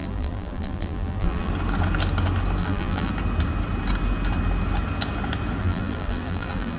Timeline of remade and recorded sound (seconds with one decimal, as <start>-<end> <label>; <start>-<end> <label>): 0.0-1.5 remade; 1.5-2.6 recorded; 2.6-3.1 remade; 3.1-5.6 recorded; 5.6-6.8 remade